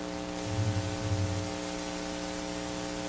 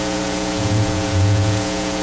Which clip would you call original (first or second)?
first